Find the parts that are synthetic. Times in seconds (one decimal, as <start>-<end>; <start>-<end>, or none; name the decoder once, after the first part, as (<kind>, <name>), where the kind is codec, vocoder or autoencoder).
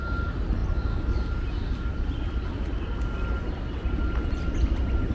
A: none